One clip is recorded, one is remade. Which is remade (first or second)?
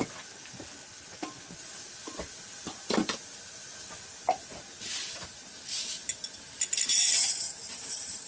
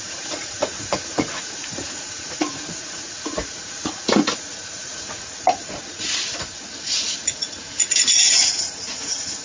second